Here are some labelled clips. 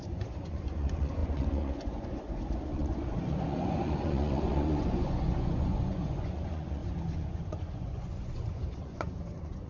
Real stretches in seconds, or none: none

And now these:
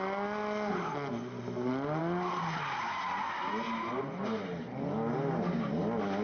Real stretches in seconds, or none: 0.0-6.2